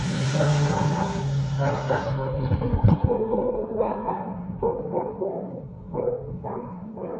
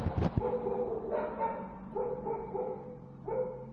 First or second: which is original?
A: second